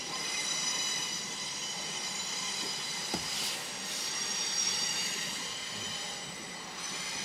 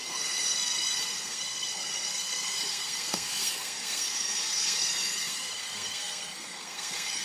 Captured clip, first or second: first